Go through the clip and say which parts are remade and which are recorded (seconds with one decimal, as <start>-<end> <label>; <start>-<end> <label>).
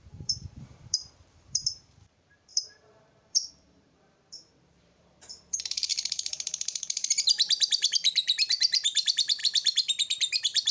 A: 0.0-10.7 remade